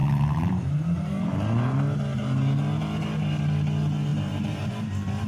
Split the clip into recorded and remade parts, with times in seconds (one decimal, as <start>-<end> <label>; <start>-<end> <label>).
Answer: 0.0-1.3 remade; 1.3-4.1 recorded; 4.1-4.7 remade; 4.7-5.3 recorded